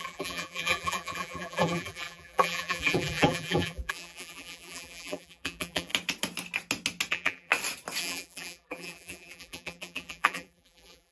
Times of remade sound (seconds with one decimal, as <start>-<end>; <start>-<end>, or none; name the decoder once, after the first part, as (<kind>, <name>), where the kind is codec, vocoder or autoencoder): 0.0-5.9 (vocoder, BigVGAN v2); 7.1-7.5; 8.0-11.1